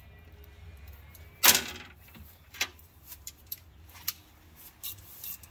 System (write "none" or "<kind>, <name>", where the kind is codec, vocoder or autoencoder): none